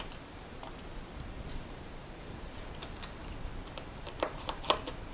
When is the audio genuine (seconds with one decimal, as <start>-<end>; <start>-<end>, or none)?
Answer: 0.6-1.3; 3.2-3.7